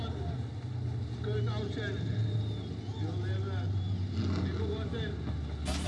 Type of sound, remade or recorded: recorded